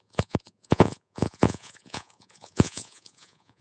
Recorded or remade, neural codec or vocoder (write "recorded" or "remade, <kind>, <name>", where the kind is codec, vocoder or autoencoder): remade, vocoder, Vocos